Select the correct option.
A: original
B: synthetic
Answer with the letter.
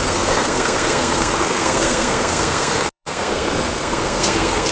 B